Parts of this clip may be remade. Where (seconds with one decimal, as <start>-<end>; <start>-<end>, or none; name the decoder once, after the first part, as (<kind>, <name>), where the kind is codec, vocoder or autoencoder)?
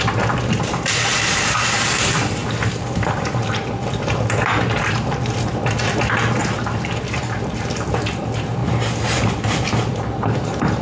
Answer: 0.0-2.4 (vocoder, BigVGAN v2); 3.5-8.6; 9.3-10.8